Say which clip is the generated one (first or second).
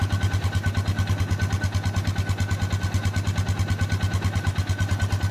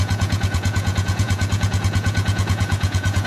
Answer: second